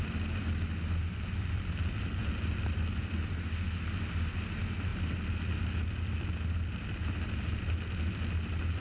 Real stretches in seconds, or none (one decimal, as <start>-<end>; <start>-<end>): 0.0-8.8

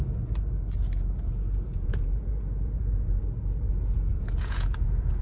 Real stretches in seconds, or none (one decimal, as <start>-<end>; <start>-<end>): 0.0-1.7; 3.2-4.1

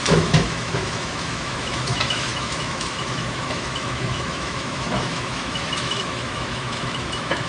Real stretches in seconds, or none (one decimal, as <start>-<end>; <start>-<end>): none

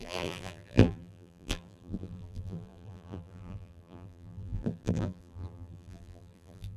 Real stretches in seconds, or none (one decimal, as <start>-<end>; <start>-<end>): none

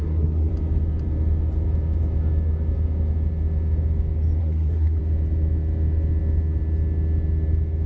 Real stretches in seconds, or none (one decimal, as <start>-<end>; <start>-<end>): 0.5-4.4; 5.0-7.9

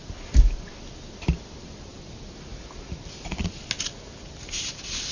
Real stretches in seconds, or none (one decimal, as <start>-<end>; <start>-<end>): 0.0-5.1